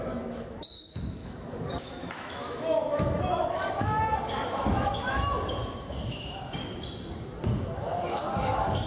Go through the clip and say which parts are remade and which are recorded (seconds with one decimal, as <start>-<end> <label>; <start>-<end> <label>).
0.0-6.6 remade; 6.6-7.6 recorded; 7.6-8.9 remade